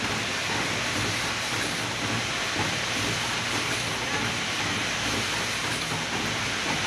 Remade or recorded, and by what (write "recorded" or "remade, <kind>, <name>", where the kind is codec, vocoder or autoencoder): recorded